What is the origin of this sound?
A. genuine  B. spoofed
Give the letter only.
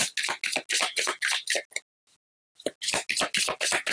A